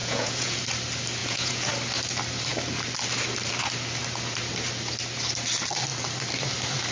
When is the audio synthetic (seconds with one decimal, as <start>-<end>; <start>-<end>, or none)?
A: 0.0-0.6; 1.2-1.7